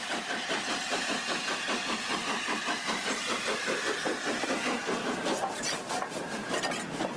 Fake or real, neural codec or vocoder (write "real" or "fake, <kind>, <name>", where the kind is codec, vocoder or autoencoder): real